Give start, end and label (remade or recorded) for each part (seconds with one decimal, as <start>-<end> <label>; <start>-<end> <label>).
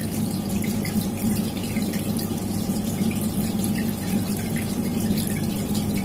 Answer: 0.0-6.0 recorded